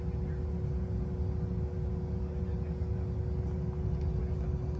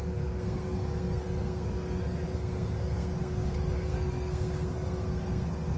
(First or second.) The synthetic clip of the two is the second